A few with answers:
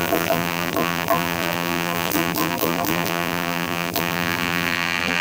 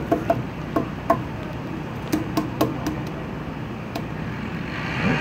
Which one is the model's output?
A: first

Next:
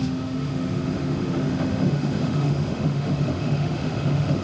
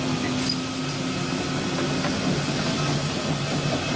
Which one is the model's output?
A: first